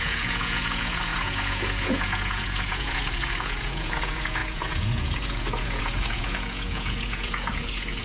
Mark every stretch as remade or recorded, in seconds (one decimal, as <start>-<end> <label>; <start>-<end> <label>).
0.0-8.0 remade